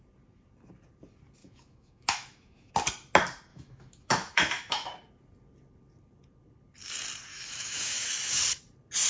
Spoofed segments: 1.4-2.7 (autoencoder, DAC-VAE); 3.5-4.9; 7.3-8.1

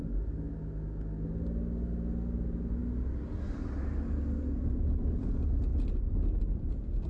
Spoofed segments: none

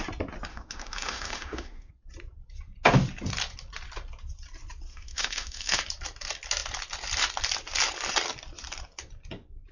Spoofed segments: 0.5-1.9 (autoencoder, DAC-VAE); 4.9-5.8

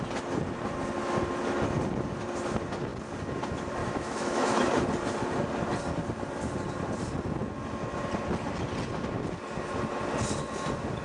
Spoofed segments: 3.8-4.7 (autoencoder, DAC-VAE)